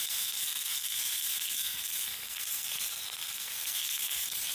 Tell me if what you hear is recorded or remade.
remade